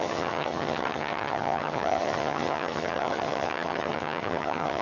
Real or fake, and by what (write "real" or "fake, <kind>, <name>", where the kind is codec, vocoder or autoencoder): fake, vocoder, HiFi-GAN